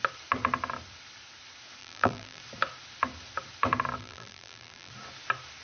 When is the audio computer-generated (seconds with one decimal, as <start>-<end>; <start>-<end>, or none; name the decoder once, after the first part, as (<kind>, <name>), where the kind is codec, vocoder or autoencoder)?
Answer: 1.8-2.4 (vocoder, BigVGAN v2); 4.0-4.9